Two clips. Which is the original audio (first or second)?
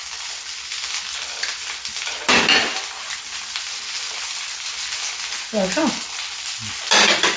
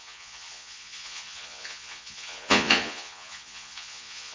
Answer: first